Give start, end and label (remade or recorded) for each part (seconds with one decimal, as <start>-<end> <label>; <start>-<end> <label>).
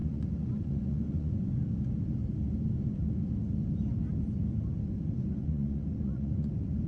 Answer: 0.0-1.5 remade; 1.5-5.4 recorded; 5.4-6.5 remade; 6.5-6.9 recorded